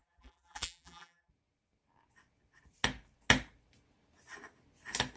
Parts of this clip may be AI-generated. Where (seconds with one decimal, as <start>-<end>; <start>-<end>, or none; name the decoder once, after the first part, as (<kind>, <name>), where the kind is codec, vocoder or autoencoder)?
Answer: 0.0-1.3 (vocoder, BigVGAN v2)